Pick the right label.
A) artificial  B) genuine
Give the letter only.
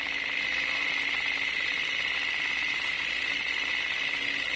B